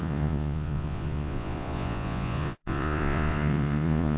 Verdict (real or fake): fake